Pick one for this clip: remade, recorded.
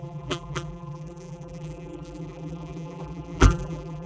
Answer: remade